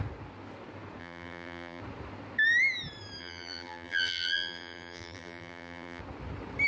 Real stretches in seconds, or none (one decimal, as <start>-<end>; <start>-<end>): 0.0-1.0; 1.8-3.2; 6.0-6.7